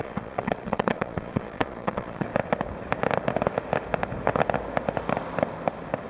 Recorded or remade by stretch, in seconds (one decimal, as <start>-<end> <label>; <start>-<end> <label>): 0.0-2.3 remade; 2.3-6.1 recorded